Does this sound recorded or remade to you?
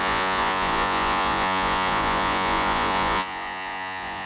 remade